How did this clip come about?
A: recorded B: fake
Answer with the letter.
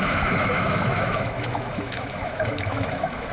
B